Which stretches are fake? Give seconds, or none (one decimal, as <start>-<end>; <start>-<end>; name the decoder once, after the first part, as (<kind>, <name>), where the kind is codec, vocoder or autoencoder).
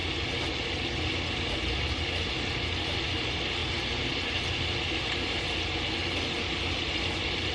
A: none